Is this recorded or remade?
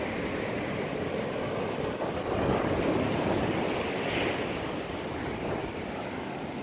recorded